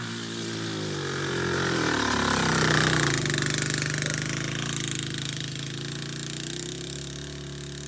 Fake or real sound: real